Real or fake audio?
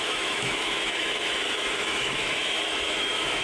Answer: fake